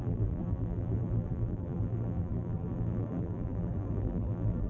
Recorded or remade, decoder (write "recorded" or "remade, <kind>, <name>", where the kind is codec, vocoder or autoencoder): remade, vocoder, BigVGAN v2